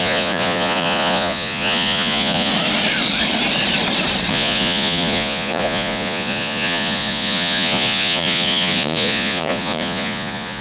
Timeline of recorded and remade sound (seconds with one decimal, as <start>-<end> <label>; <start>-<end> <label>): 0.0-2.5 remade; 2.5-4.3 recorded; 4.3-10.6 remade